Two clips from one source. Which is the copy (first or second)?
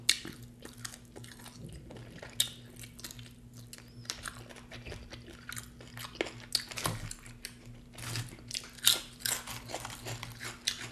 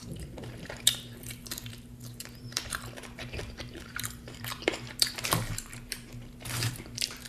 second